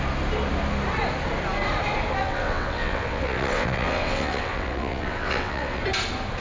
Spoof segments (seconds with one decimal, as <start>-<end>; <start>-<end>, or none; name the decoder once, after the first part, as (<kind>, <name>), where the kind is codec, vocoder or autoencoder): 2.2-5.8 (vocoder, WaveNeXt)